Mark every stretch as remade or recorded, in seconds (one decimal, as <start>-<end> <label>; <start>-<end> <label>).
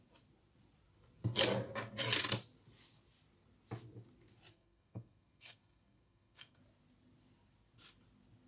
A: 0.0-4.5 recorded; 4.5-6.6 remade; 6.6-8.5 recorded